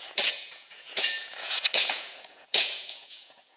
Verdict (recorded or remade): remade